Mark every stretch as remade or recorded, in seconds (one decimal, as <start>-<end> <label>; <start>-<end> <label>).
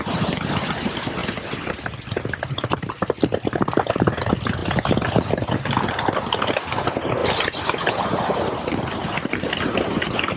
0.0-10.4 recorded